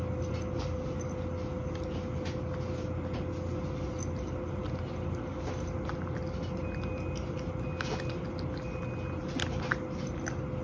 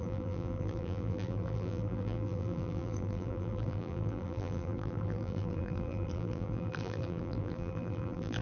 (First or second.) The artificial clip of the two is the second